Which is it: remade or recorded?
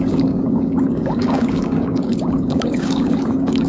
remade